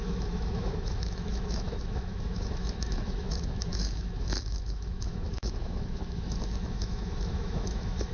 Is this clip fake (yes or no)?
yes